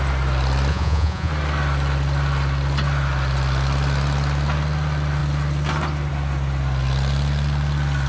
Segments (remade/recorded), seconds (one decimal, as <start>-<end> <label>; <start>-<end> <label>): 0.0-0.7 recorded; 0.7-1.3 remade; 1.3-8.1 recorded